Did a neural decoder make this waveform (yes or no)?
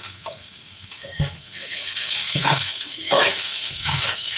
yes